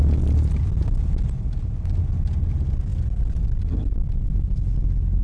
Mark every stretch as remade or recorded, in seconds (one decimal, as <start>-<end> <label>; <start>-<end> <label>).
0.0-5.2 recorded